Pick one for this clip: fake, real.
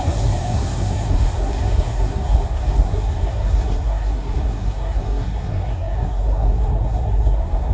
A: fake